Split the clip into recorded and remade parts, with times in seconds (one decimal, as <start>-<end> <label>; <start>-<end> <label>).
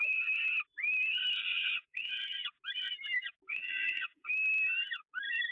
0.0-1.4 recorded; 1.4-2.1 remade; 2.1-3.5 recorded; 3.5-4.3 remade; 4.3-5.5 recorded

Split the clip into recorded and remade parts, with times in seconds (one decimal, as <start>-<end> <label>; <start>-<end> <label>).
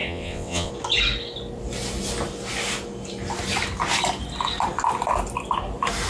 0.0-0.7 remade; 0.7-6.1 recorded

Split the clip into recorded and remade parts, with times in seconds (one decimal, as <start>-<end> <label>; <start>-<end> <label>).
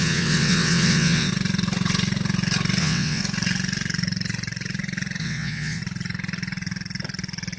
0.0-1.3 remade; 1.3-2.8 recorded; 2.8-3.2 remade; 3.2-5.2 recorded; 5.2-5.8 remade; 5.8-7.6 recorded